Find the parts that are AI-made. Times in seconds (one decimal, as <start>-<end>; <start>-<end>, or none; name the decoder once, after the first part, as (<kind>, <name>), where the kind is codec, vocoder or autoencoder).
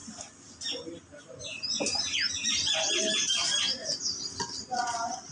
none